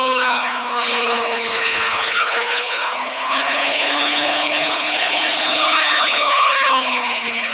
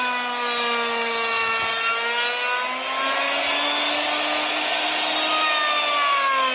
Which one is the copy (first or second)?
first